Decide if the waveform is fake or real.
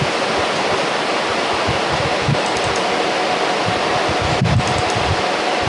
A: real